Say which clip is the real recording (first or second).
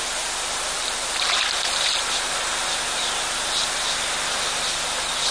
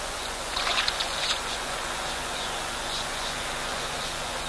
first